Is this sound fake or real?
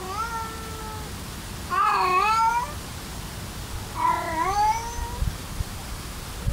real